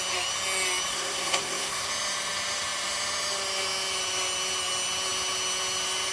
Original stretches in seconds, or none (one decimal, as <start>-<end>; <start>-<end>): 0.0-0.9; 1.9-6.1